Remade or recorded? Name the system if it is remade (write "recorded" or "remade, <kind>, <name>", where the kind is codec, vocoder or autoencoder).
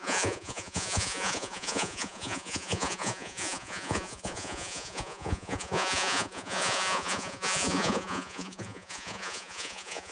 remade, vocoder, Vocos